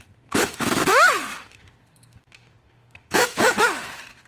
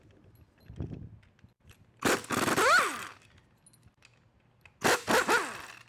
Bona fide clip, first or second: second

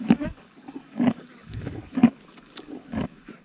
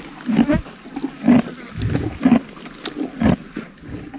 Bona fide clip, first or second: second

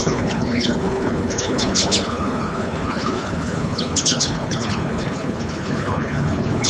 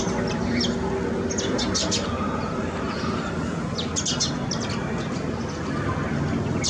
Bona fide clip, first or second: second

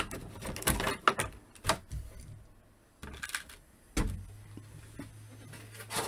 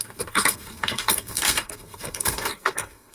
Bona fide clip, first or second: first